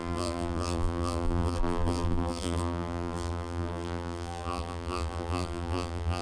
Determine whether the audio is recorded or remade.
remade